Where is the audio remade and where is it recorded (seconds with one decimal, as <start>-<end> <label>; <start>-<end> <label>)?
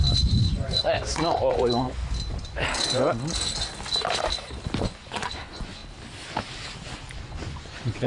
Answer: 0.0-2.0 remade; 2.0-4.8 recorded; 4.8-5.8 remade; 5.8-7.2 recorded; 7.2-8.1 remade